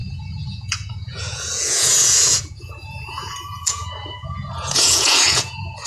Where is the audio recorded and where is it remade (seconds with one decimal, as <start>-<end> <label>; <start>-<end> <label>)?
0.0-5.9 remade